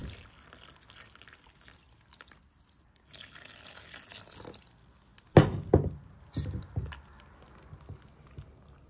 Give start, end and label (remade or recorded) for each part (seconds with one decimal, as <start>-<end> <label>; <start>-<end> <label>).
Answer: 0.0-8.9 recorded

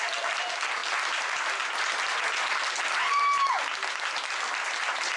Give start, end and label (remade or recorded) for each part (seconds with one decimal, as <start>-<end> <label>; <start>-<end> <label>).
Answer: 0.0-5.2 recorded